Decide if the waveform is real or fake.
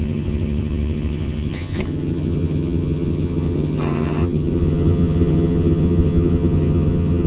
fake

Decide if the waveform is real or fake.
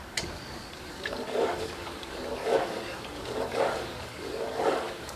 fake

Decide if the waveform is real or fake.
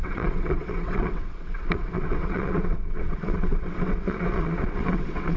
fake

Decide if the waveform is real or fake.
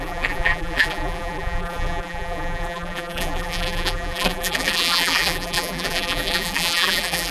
fake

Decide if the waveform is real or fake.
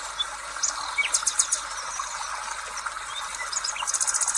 real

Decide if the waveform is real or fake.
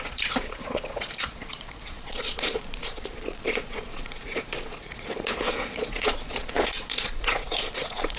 fake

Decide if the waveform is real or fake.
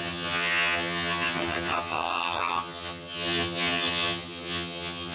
fake